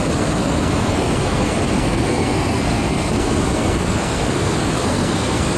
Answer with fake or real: fake